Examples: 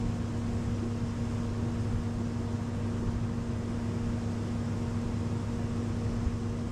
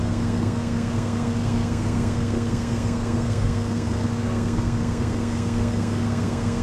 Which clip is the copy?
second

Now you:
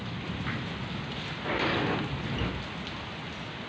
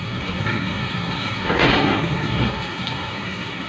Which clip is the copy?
second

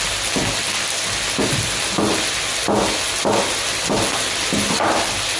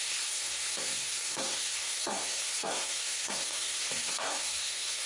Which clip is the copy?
second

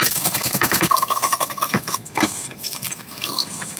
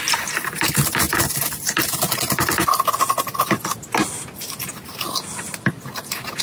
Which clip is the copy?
first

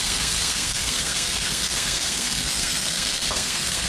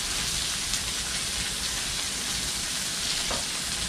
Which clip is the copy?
first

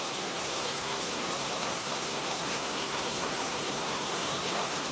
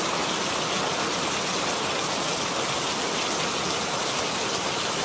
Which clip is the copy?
first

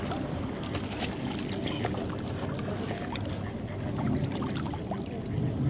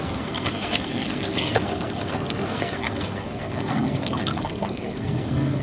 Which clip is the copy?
second